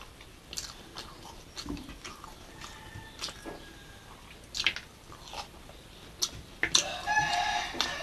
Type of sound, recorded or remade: recorded